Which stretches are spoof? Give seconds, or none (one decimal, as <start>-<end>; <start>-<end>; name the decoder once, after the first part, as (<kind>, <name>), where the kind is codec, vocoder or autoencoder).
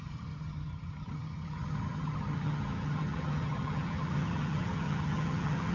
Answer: 0.0-5.7 (vocoder, HiFi-GAN)